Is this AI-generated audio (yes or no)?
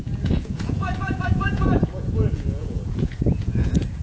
yes